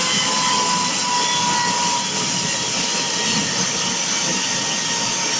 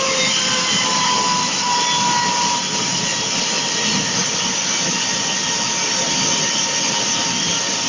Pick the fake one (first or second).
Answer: second